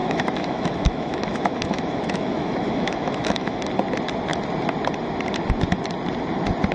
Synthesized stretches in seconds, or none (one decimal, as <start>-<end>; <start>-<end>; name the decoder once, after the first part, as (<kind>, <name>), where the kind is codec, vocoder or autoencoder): 0.0-3.6 (autoencoder, DAC-VAE)